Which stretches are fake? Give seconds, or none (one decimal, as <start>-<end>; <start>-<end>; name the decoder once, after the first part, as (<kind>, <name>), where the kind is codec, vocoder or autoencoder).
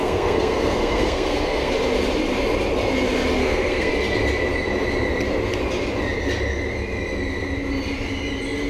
0.0-1.7 (codec, SNAC); 3.4-3.9